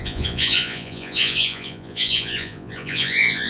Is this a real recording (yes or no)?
no